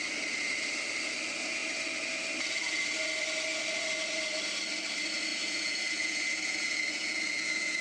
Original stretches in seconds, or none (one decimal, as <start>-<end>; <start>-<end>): 0.0-5.3